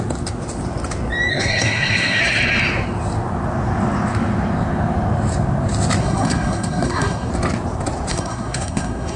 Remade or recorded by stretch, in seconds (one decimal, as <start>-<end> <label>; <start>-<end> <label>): 0.0-1.3 recorded; 1.3-2.2 remade; 2.2-6.0 recorded; 6.0-7.3 remade; 7.3-8.1 recorded; 8.1-9.2 remade